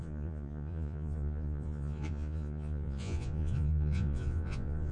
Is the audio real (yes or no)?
no